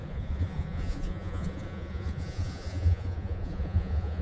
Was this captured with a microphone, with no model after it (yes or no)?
no